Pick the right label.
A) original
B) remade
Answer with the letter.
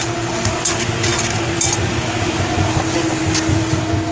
A